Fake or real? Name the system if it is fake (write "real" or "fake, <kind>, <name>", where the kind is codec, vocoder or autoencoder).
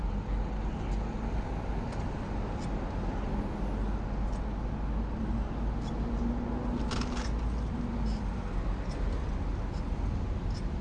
real